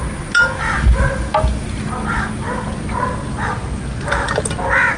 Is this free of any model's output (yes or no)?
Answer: yes